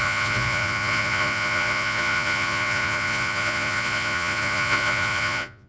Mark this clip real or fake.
fake